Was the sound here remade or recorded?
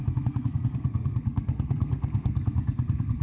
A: remade